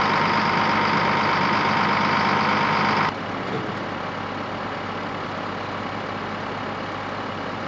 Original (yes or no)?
yes